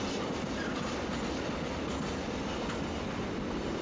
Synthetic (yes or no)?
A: no